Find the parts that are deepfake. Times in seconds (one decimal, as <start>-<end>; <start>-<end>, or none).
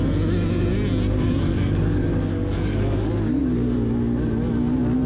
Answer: 1.5-3.1